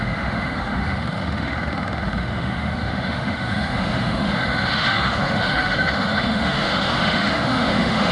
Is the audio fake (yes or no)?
yes